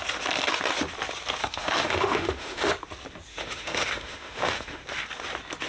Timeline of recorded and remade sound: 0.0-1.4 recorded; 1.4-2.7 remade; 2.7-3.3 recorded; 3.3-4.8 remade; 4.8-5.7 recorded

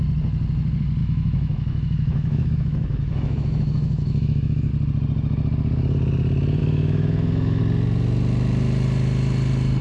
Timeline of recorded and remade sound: 0.0-1.0 recorded; 1.0-4.7 remade; 4.7-6.6 recorded; 6.6-7.6 remade; 7.6-9.8 recorded

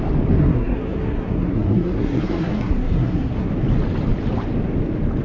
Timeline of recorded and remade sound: 0.0-0.4 recorded; 0.4-3.5 remade; 3.5-5.2 recorded

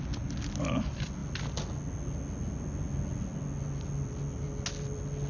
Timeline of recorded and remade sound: 0.0-5.3 recorded